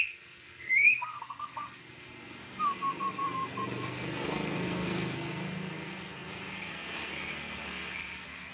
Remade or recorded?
remade